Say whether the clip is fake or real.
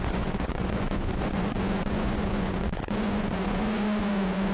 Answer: fake